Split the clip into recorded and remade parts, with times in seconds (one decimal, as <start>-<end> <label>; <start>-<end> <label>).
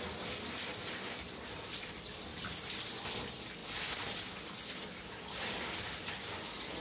0.0-2.3 recorded; 2.3-2.9 remade; 2.9-3.6 recorded; 3.6-4.8 remade; 4.8-6.8 recorded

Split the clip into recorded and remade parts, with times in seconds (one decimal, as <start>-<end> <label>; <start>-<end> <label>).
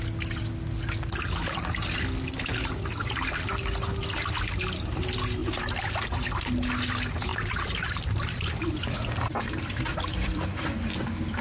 0.0-5.4 recorded; 5.4-6.4 remade; 6.4-7.3 recorded; 7.3-11.0 remade; 11.0-11.4 recorded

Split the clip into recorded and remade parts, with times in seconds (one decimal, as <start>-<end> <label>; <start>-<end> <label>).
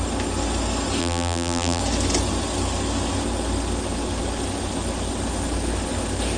0.0-1.0 recorded; 1.0-1.8 remade; 1.8-6.4 recorded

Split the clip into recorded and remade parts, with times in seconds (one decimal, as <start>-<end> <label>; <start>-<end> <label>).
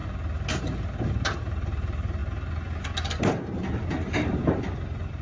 0.0-0.6 recorded; 0.6-2.2 remade; 2.2-3.3 recorded; 3.3-5.2 remade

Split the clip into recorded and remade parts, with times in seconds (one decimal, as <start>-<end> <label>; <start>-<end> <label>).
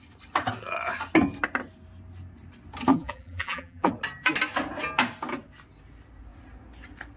0.0-2.9 recorded; 2.9-3.9 remade; 3.9-7.2 recorded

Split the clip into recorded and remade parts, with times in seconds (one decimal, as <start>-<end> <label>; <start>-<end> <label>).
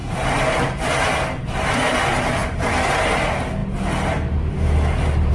0.0-3.6 remade; 3.6-5.3 recorded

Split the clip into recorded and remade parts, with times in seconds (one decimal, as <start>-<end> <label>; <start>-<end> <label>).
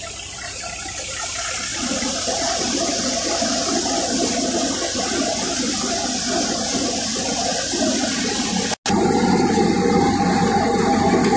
0.0-1.7 recorded; 1.7-2.7 remade; 2.7-11.4 recorded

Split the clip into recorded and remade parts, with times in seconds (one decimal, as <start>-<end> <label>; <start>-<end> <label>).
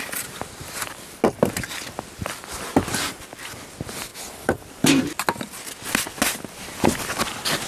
0.0-4.1 recorded; 4.1-5.0 remade; 5.0-7.7 recorded